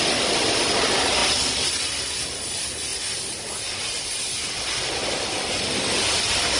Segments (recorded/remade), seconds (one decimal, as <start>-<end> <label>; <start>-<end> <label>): 0.0-6.6 recorded